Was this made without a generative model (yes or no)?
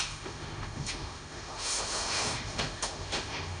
no